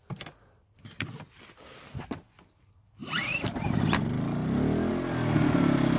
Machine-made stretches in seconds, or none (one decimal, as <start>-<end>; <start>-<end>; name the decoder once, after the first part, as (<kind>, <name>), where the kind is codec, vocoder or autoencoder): none